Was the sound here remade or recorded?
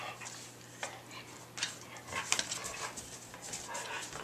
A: recorded